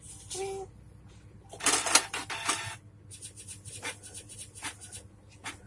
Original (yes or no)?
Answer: yes